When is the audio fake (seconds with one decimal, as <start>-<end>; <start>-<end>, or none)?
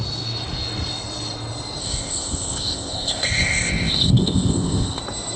1.8-5.0